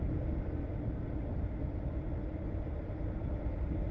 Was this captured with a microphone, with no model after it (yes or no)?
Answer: yes